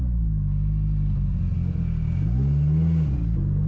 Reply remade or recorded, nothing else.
recorded